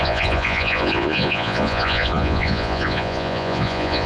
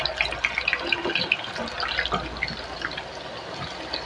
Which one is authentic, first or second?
second